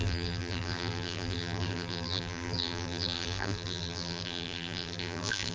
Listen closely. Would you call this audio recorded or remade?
remade